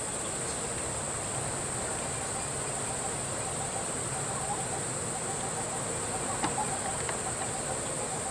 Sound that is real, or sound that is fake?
real